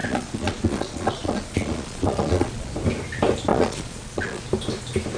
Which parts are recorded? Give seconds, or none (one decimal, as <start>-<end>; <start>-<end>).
2.7-3.5; 4.4-5.2